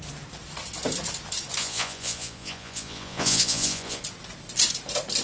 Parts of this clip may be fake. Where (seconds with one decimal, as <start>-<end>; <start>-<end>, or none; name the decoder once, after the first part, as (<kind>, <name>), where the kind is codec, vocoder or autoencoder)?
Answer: 1.6-4.0 (vocoder, Vocos)